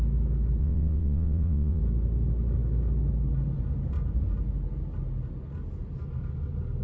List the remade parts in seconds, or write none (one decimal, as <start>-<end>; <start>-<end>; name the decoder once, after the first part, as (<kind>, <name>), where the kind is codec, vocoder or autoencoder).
0.6-1.8 (vocoder, WaveNeXt)